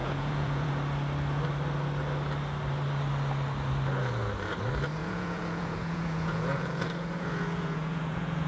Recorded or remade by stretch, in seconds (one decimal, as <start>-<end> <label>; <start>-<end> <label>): 0.0-0.7 remade; 0.7-5.0 recorded; 5.0-8.5 remade